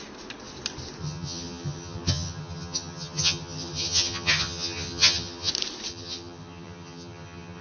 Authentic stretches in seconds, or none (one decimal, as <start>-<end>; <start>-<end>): 0.0-1.0; 5.5-5.9